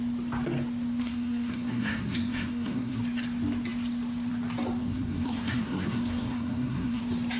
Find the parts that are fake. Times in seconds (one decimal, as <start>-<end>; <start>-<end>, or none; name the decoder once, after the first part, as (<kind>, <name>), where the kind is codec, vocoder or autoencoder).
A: 1.0-3.0 (codec, SNAC); 4.8-7.0